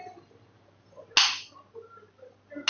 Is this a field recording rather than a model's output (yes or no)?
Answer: yes